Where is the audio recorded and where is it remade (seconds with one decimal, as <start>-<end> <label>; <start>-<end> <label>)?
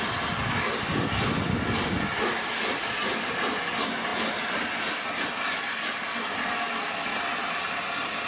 0.0-8.3 recorded